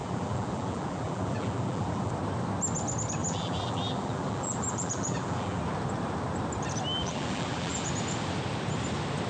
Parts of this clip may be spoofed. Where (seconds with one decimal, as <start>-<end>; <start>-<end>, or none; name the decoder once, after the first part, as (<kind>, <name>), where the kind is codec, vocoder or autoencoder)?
0.0-2.1 (vocoder, BigVGAN v2); 3.2-5.6; 6.9-7.9

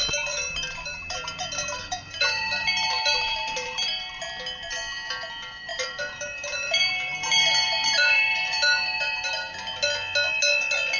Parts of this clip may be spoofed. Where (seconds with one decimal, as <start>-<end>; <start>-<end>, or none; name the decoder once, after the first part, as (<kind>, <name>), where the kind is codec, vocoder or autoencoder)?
0.0-4.2 (vocoder, BigVGAN v2); 5.7-9.6

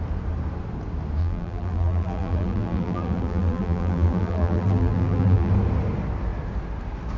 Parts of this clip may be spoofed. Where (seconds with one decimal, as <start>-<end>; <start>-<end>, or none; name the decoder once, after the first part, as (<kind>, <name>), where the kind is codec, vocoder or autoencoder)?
1.2-5.5 (vocoder, BigVGAN v2)